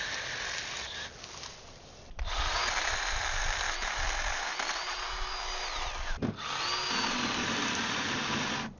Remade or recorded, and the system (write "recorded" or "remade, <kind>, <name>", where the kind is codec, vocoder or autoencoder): recorded